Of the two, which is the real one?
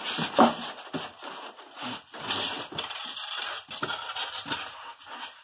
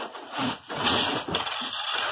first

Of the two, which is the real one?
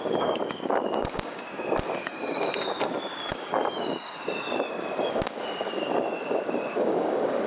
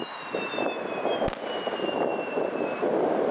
second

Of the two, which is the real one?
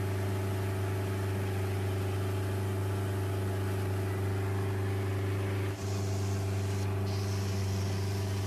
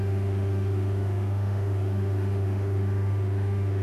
first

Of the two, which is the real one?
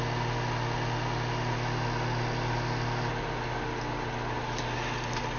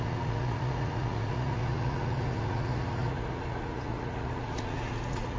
first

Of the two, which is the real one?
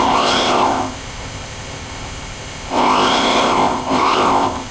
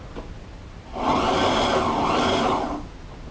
second